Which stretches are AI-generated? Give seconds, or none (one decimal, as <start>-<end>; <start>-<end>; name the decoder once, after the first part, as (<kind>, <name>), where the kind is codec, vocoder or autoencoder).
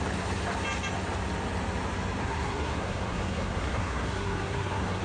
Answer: 2.2-5.0 (codec, SNAC)